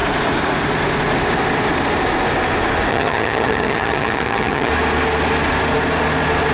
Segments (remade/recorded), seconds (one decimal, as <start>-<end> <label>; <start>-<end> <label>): 0.0-2.9 recorded; 2.9-4.7 remade; 4.7-6.5 recorded